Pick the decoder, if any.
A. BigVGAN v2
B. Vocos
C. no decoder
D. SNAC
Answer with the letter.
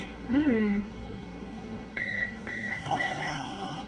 D